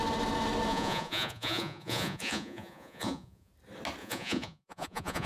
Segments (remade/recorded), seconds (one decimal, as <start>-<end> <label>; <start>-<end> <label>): 0.0-0.7 recorded; 0.7-3.5 remade; 3.5-4.0 recorded; 4.0-5.3 remade